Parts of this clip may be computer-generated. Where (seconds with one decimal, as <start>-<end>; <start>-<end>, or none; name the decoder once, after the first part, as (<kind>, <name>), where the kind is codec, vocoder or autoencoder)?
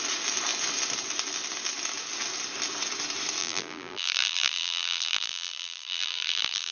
3.4-6.7 (vocoder, BigVGAN v2)